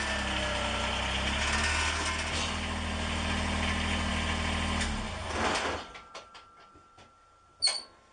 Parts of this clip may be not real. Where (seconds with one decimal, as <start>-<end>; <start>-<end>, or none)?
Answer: none